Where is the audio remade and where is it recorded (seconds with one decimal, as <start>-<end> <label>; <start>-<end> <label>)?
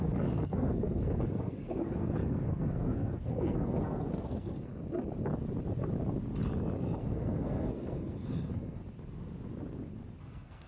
0.0-4.7 remade; 4.7-7.0 recorded; 7.0-8.8 remade; 8.8-10.2 recorded; 10.2-10.7 remade